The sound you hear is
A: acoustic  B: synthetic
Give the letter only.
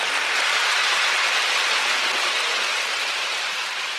B